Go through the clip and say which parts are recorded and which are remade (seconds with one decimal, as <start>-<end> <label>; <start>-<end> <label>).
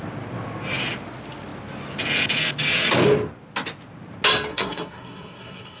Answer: 0.0-4.5 recorded; 4.5-5.8 remade